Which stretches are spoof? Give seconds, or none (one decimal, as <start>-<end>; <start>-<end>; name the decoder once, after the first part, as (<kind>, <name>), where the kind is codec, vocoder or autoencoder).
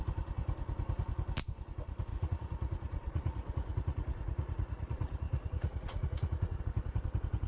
2.1-6.6 (vocoder, Vocos)